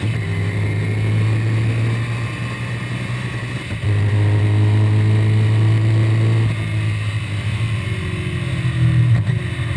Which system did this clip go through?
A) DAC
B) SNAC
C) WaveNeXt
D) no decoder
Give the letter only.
D